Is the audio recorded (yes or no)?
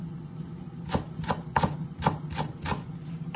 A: yes